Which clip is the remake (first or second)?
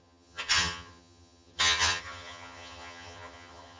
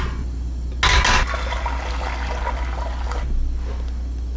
first